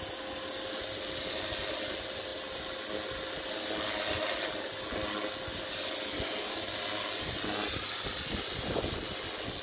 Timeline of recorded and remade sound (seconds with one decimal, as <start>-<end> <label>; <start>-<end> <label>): 0.0-9.6 recorded